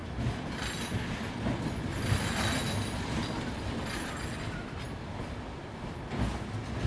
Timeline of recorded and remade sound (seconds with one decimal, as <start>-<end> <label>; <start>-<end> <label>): 0.0-6.9 recorded